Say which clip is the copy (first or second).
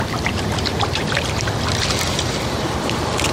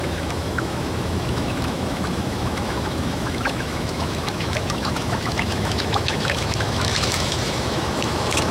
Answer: second